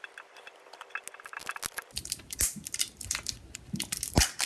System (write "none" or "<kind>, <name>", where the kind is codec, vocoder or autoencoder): none